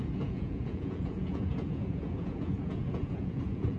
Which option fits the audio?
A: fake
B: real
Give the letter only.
A